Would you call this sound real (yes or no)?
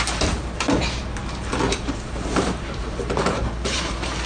no